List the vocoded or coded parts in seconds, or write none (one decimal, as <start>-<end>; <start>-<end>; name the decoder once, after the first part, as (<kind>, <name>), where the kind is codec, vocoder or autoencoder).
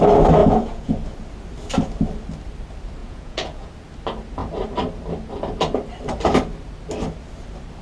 0.4-0.9 (vocoder, Vocos); 3.0-3.7